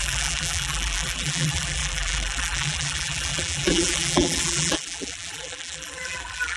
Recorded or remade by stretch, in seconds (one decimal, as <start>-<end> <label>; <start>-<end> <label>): 0.0-6.6 remade